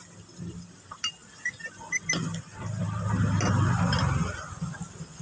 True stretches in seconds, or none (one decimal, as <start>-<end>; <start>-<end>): 0.0-5.2